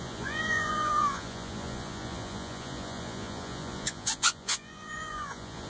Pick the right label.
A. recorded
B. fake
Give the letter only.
B